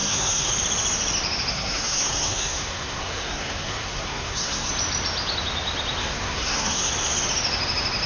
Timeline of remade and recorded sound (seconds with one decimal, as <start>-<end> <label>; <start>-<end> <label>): 0.0-0.5 remade; 0.5-1.5 recorded; 1.5-4.7 remade; 4.7-6.0 recorded; 6.0-6.9 remade; 6.9-8.1 recorded